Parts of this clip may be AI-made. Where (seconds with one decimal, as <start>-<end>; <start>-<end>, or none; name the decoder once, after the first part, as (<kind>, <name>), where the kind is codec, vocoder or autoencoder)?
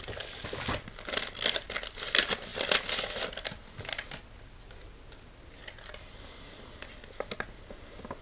none